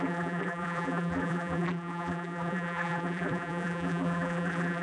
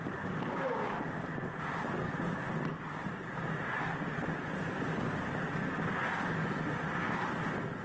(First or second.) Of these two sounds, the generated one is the first